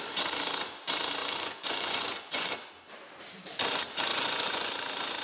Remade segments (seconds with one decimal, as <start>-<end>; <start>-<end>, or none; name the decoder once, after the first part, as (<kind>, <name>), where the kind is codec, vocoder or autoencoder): 1.2-2.7 (vocoder, Vocos); 4.1-4.7